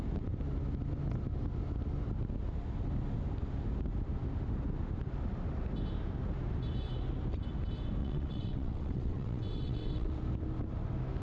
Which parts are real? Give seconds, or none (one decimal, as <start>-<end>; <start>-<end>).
0.0-8.0; 10.2-11.2

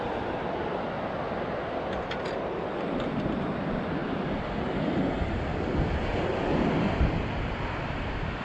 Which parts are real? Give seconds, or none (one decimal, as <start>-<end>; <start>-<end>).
4.0-5.4

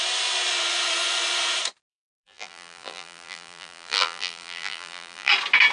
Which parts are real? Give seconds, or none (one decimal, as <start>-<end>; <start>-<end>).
0.0-1.9; 5.3-5.7